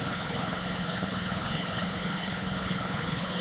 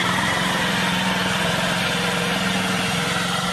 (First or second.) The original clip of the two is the second